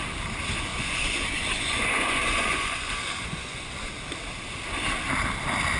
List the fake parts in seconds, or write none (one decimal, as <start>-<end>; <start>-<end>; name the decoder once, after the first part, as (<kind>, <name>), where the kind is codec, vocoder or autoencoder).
0.7-3.9 (vocoder, Vocos)